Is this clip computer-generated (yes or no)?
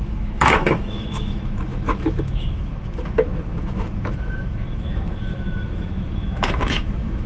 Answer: yes